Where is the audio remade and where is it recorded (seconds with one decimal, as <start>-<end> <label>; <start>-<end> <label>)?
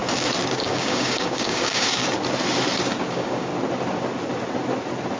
0.0-0.6 recorded; 0.6-2.0 remade; 2.0-3.1 recorded; 3.1-3.5 remade; 3.5-5.2 recorded